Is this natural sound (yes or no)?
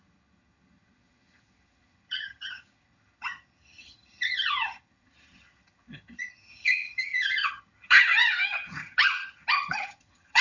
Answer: no